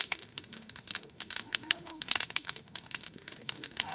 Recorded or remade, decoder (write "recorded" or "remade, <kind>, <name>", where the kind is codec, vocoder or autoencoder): remade, autoencoder, DAC-VAE